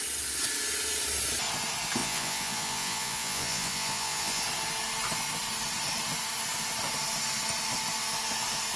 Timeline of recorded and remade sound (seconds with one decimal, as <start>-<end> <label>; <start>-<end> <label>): 0.0-2.0 recorded; 2.0-4.4 remade; 4.4-8.8 recorded